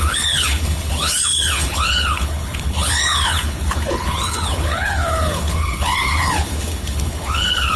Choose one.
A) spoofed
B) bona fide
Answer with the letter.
A